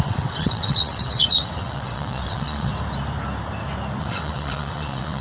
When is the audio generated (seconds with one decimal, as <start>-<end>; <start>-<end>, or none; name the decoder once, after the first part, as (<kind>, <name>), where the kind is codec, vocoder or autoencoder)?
0.0-2.7 (vocoder, WaveNeXt); 4.0-5.2